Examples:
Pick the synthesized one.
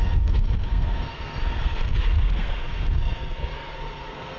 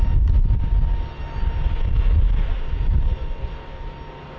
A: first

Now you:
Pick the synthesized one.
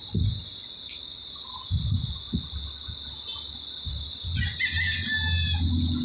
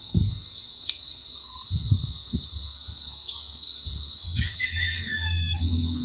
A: second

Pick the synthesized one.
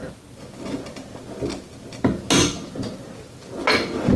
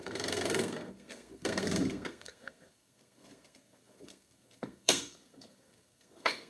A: second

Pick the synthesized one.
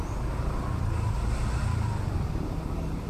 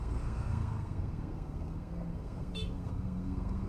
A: second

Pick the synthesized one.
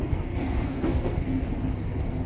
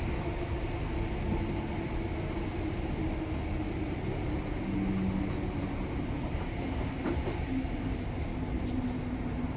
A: first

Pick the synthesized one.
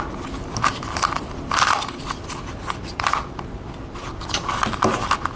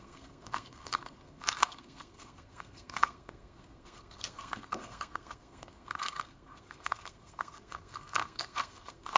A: second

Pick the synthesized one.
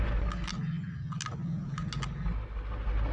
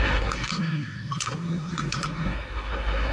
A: second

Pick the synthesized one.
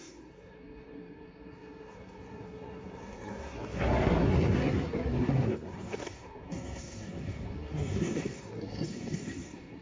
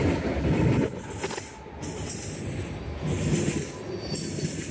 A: first